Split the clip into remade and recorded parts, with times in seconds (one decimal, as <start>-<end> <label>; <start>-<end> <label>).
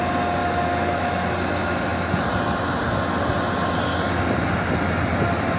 0.0-0.4 recorded; 0.4-1.3 remade; 1.3-5.6 recorded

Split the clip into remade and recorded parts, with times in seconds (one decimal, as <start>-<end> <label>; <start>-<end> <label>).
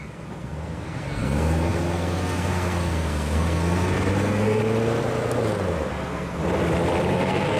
0.0-4.6 remade; 4.6-5.9 recorded; 5.9-6.4 remade; 6.4-7.1 recorded; 7.1-7.6 remade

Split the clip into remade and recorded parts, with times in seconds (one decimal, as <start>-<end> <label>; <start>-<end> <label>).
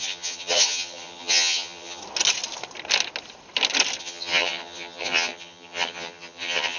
0.0-2.0 remade; 2.0-4.0 recorded; 4.0-6.8 remade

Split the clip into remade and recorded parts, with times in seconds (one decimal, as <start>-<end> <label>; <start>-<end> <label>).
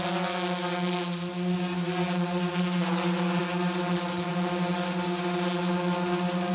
0.0-6.5 recorded